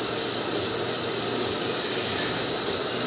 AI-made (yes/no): no